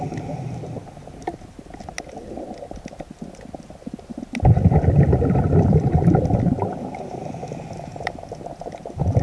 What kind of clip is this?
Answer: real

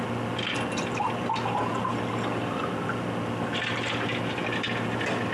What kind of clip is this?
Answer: real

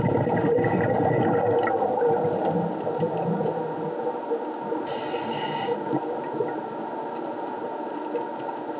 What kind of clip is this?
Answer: real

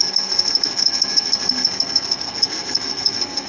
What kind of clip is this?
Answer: fake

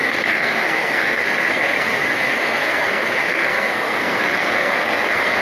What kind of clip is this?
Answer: fake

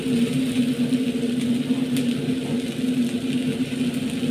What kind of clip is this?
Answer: real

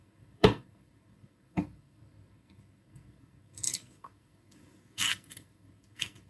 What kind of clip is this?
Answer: fake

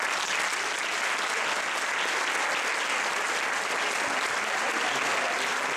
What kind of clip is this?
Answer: real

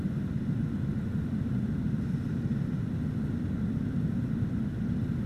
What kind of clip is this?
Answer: real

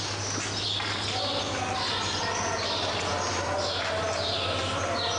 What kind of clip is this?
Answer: real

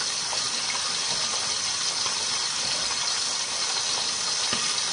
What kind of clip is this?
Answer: real